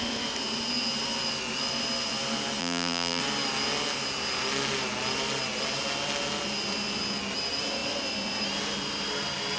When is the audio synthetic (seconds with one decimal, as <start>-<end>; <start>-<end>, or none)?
2.6-3.2